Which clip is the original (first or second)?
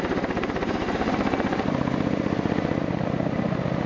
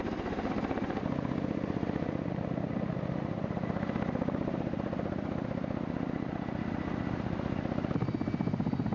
first